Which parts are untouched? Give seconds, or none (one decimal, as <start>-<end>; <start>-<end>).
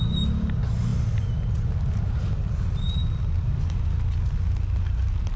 0.0-5.4